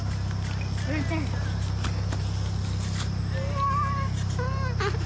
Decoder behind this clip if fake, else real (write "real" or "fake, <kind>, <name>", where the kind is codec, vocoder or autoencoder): real